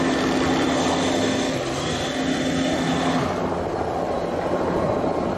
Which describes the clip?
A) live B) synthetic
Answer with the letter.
A